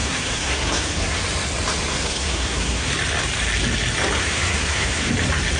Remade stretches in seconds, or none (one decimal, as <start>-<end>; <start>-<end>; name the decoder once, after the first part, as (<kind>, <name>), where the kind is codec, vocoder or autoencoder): 0.0-1.2 (codec, SNAC); 1.9-2.9; 4.2-5.1